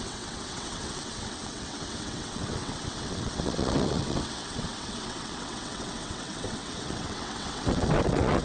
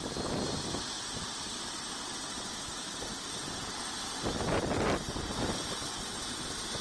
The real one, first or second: second